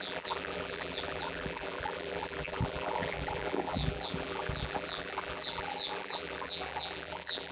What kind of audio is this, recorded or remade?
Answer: remade